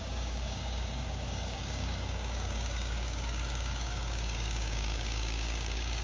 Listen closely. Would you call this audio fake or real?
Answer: fake